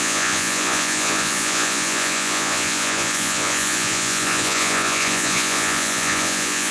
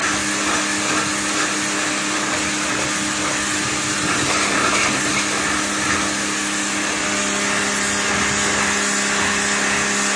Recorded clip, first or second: second